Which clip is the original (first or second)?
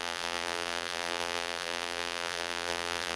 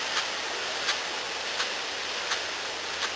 second